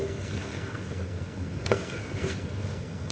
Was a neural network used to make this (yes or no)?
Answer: yes